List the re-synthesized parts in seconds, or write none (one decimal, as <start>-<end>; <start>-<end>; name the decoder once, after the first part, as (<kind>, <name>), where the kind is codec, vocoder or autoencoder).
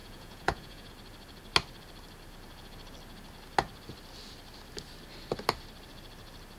0.0-0.9 (vocoder, Vocos)